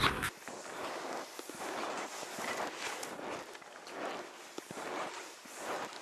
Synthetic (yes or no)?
no